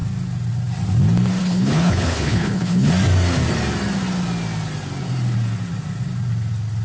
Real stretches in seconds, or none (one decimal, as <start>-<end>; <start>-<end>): 0.0-1.4; 2.9-6.8